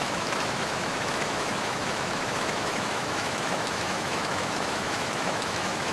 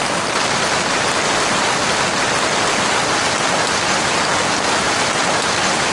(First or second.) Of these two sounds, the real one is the second